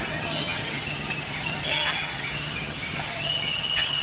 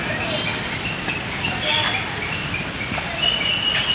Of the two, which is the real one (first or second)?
second